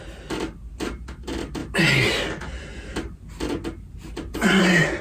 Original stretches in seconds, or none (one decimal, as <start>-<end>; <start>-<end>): 0.0-5.0